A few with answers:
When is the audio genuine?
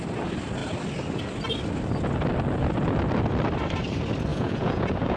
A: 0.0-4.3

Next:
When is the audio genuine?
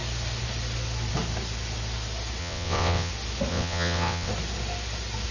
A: 0.0-2.4; 3.1-3.5; 4.3-5.3